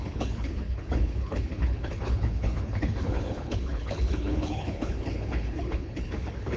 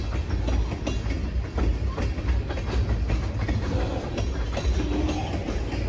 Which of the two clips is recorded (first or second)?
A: second